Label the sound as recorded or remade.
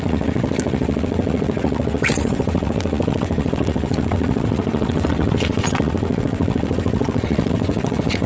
remade